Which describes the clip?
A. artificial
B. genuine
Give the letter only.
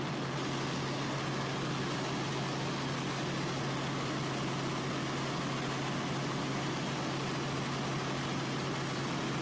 B